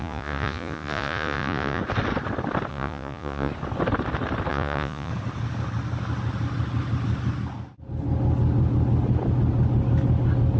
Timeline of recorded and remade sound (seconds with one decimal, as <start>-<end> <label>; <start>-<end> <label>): 0.0-1.8 remade; 1.8-2.7 recorded; 2.7-3.5 remade; 3.5-4.5 recorded; 4.5-5.1 remade; 5.1-10.6 recorded